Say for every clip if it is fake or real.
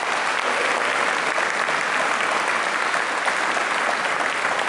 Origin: real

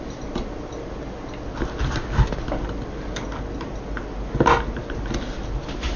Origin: real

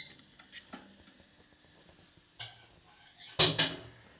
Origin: real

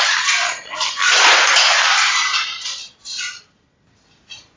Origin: real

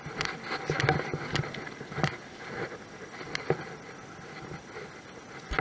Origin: real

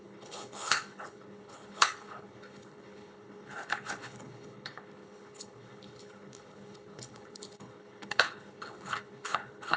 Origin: fake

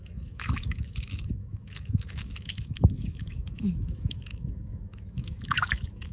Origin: fake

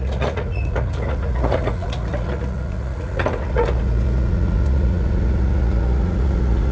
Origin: fake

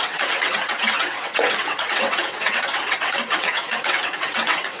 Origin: fake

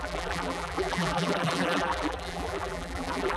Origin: fake